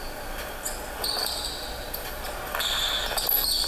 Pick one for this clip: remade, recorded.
recorded